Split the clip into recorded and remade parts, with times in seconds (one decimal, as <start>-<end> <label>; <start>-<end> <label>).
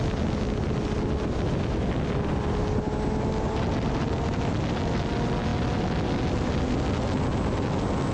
0.0-8.1 recorded